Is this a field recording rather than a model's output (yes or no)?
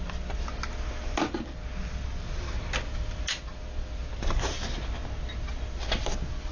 yes